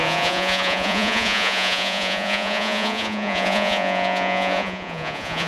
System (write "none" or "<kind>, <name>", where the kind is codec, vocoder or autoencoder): vocoder, Vocos